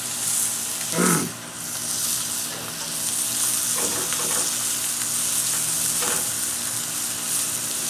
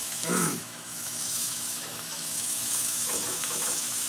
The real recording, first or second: first